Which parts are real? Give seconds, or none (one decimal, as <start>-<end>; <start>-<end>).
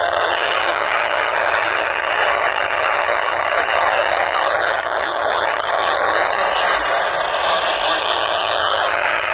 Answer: 6.4-8.0